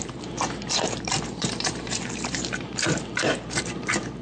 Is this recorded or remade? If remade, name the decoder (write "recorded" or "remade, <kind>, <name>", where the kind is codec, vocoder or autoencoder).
remade, vocoder, BigVGAN v2